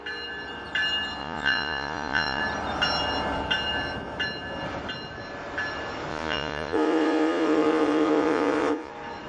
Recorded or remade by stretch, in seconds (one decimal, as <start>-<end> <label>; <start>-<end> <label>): 0.0-1.2 recorded; 1.2-2.4 remade; 2.4-6.1 recorded; 6.1-8.9 remade; 8.9-9.3 recorded